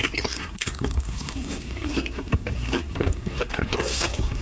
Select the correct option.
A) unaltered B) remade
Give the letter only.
B